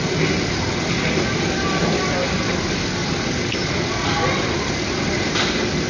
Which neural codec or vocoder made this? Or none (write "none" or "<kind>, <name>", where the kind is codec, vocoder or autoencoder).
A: none